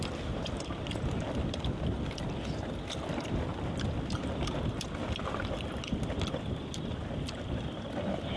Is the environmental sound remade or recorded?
recorded